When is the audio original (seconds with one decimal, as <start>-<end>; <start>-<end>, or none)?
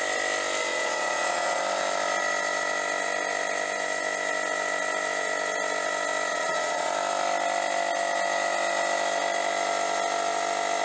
0.0-0.7; 1.6-6.3; 6.9-10.8